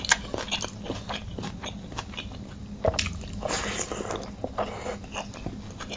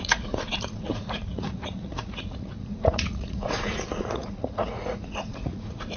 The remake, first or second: second